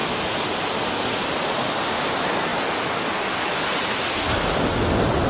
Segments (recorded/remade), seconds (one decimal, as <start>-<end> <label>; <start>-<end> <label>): 0.0-5.3 recorded